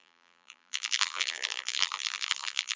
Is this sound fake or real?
fake